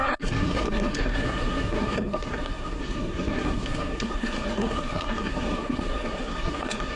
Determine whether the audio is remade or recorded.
remade